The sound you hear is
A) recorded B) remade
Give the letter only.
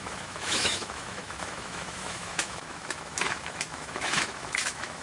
B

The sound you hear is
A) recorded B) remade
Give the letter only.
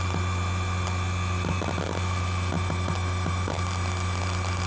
A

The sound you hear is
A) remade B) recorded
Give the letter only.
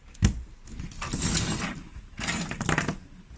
B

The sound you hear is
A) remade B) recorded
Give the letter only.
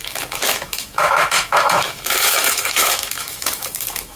A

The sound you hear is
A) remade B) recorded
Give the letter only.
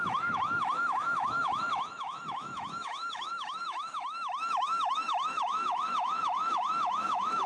A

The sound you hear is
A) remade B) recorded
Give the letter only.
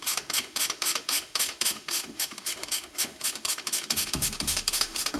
A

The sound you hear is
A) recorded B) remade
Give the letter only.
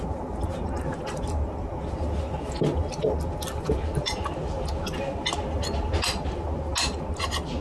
A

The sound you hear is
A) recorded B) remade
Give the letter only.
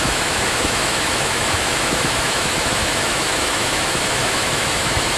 B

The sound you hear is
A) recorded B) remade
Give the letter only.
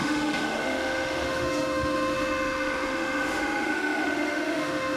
B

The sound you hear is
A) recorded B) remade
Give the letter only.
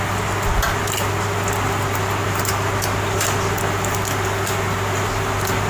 A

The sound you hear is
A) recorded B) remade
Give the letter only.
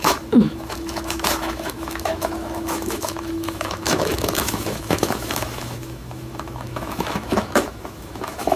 B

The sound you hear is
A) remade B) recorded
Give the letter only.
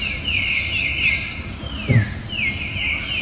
B